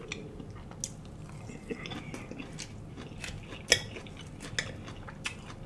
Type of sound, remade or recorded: recorded